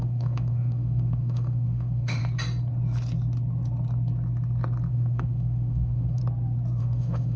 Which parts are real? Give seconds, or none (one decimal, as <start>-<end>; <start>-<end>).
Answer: 2.2-4.9; 6.2-6.8